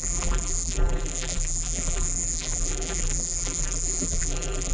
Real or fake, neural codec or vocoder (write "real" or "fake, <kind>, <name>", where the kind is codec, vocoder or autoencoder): fake, vocoder, BigVGAN v2